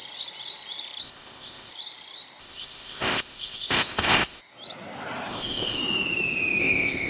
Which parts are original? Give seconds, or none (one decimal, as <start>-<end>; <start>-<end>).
0.0-1.0; 1.7-2.4; 4.4-5.3; 5.8-6.6